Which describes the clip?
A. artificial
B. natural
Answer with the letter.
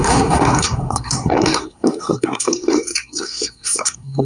A